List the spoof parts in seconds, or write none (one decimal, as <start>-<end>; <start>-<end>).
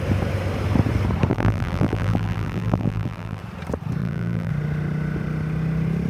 1.3-3.4; 4.0-4.5